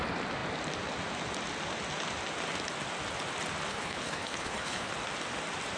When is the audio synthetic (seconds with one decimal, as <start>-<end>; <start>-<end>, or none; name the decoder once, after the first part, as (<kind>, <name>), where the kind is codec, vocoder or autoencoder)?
3.7-4.9 (codec, HILCodec)